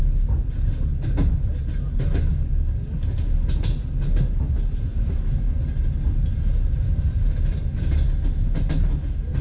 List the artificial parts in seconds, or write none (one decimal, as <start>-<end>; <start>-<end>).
none